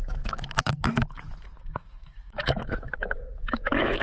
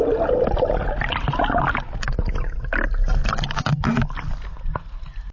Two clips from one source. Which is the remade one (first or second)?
first